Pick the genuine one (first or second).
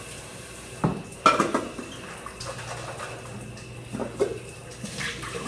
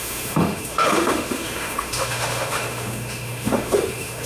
first